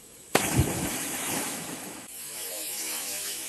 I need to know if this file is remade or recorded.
remade